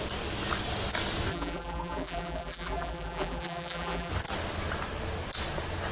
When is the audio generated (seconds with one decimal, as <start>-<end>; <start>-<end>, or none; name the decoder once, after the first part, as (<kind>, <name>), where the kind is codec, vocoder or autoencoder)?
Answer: 1.3-4.1 (vocoder, BigVGAN v2)